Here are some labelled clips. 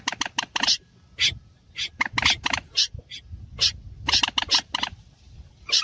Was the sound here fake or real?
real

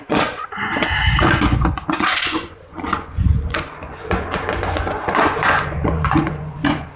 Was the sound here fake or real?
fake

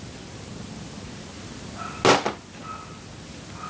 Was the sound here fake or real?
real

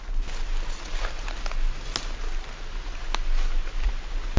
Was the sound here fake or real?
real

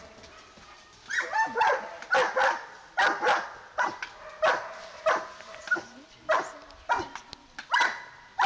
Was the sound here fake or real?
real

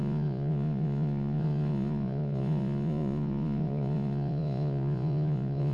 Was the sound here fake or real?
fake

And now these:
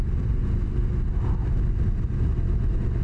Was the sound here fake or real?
real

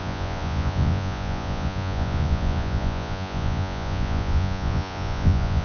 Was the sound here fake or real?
fake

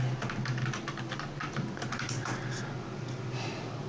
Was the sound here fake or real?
real